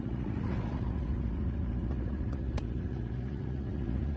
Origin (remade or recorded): remade